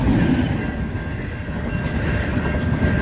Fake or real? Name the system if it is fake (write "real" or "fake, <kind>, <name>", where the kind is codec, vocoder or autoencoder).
real